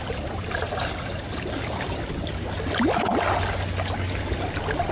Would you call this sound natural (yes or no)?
yes